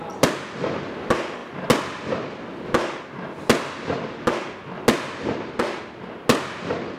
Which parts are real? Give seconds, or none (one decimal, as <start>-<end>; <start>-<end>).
0.0-7.0